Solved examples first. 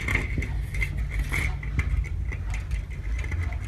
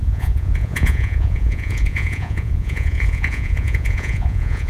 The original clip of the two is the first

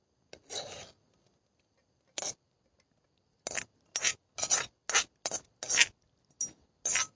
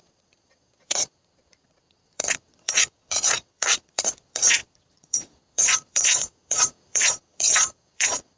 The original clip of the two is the first